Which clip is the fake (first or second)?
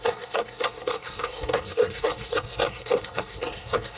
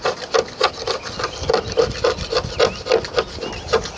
first